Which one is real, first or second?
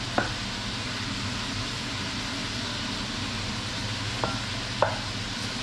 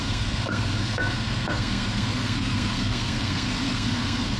first